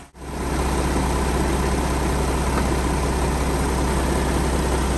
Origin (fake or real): real